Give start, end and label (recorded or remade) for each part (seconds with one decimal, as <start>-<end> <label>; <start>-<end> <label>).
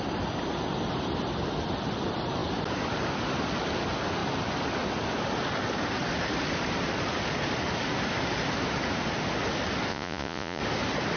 0.0-9.9 recorded; 9.9-10.6 remade; 10.6-11.2 recorded